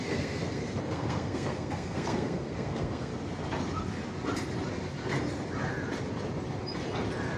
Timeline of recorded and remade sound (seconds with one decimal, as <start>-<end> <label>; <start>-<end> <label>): 0.0-3.1 remade; 3.1-7.4 recorded